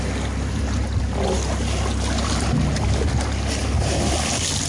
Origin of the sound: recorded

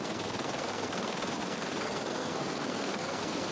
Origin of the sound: remade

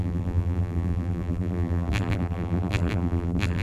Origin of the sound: remade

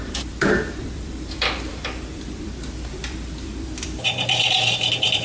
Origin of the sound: remade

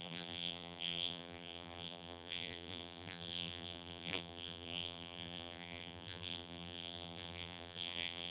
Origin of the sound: remade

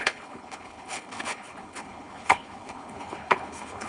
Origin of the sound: remade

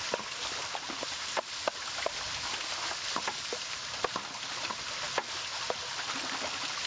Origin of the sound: recorded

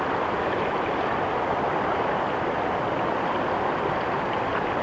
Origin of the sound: recorded